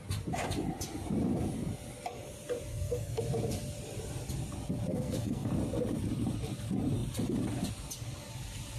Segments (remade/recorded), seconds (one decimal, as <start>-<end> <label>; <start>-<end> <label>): 0.0-2.7 recorded; 2.7-3.2 remade; 3.2-4.9 recorded; 4.9-5.5 remade; 5.5-8.8 recorded